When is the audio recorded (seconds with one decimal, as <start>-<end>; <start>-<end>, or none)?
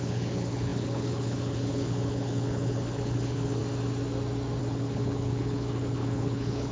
3.6-4.6